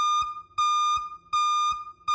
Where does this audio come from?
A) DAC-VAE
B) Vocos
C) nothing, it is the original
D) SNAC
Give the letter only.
C